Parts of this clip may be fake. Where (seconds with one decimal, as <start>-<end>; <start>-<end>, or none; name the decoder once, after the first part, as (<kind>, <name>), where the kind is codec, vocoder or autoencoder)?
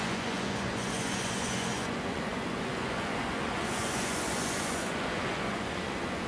0.0-6.3 (vocoder, Vocos)